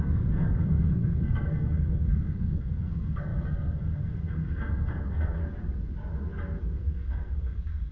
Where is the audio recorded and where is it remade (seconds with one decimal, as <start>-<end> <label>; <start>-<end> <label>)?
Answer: 0.0-5.4 remade; 5.4-6.6 recorded; 6.6-7.9 remade